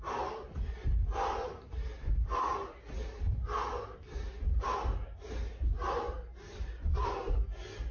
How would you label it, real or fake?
real